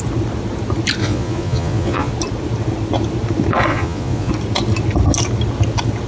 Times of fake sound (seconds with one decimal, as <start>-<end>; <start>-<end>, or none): 1.0-2.1; 3.7-4.3